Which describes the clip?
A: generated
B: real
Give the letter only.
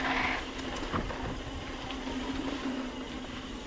B